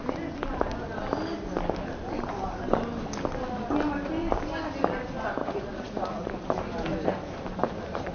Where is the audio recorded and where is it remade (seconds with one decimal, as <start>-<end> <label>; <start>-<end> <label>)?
0.0-5.4 recorded; 5.4-6.3 remade; 6.3-8.1 recorded